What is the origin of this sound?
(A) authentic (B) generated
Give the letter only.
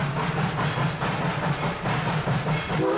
A